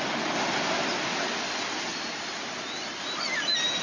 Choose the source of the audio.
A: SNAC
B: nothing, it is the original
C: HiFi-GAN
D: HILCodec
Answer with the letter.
B